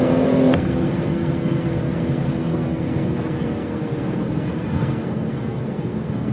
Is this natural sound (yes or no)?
no